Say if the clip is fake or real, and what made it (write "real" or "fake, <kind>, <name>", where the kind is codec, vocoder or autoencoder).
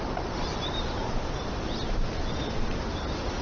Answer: real